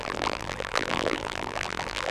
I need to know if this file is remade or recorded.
remade